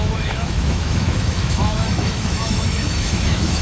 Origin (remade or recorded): remade